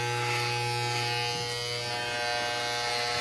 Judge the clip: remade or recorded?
recorded